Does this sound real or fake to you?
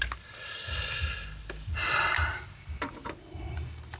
real